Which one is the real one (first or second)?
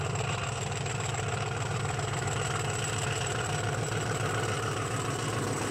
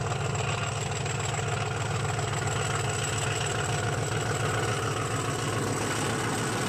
second